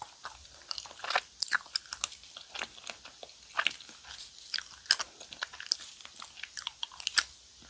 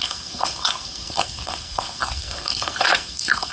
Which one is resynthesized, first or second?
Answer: second